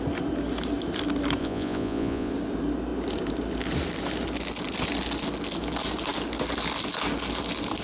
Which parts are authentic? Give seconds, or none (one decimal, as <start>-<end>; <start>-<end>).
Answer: 0.0-1.4; 2.3-7.8